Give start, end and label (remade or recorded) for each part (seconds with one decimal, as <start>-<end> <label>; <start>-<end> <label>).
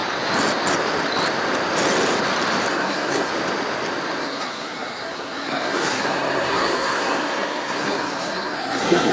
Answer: 0.0-2.7 recorded; 2.7-3.3 remade; 3.3-4.2 recorded; 4.2-9.1 remade